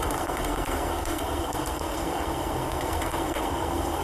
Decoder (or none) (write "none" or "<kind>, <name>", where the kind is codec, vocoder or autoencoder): codec, SNAC